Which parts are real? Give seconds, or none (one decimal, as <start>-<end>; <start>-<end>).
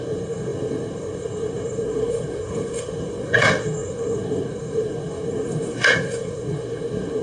none